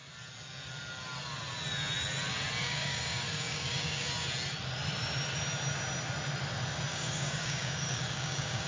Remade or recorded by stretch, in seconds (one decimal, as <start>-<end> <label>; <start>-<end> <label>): 0.0-2.6 recorded; 2.6-4.1 remade; 4.1-6.9 recorded; 6.9-8.7 remade